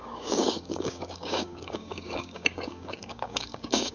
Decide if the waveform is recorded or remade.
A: remade